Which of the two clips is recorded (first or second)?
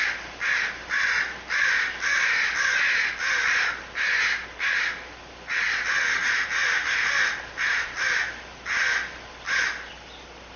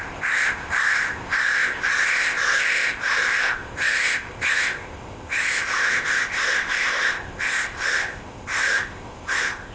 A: first